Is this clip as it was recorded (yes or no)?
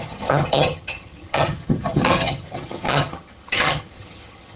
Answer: no